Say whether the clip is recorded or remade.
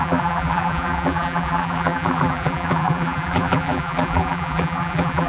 remade